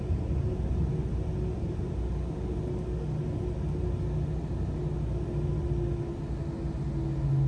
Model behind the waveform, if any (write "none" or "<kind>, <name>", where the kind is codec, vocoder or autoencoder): none